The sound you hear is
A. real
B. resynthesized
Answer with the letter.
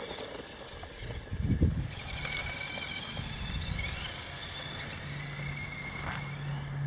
A